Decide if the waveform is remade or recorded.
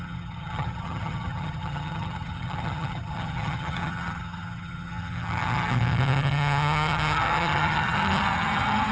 remade